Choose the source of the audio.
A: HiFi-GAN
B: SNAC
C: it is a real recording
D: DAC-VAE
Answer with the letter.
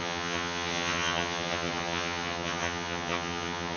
A